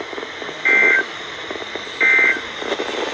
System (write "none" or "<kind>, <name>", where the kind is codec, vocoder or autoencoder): none